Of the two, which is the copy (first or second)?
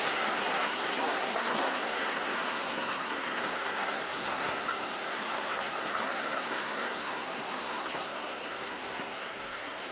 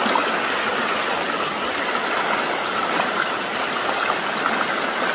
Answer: first